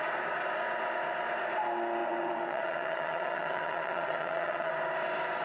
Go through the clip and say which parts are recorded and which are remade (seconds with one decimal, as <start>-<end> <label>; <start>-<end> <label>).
0.0-2.0 recorded; 2.0-4.7 remade; 4.7-5.4 recorded